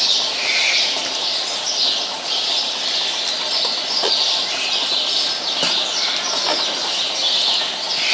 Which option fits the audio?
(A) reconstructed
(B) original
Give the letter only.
B